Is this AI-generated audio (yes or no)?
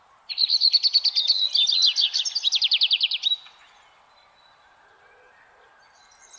no